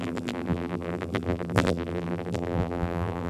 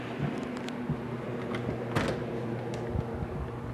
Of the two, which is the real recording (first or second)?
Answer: second